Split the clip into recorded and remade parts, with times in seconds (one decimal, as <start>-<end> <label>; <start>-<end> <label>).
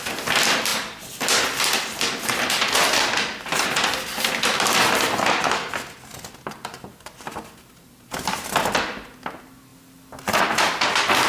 0.0-11.3 recorded